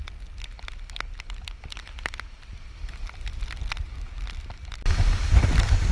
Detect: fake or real real